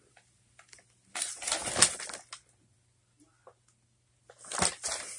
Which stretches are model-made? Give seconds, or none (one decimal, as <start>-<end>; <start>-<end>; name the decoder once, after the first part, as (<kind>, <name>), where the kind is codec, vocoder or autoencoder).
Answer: none